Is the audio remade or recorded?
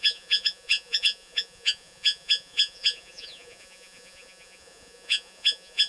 remade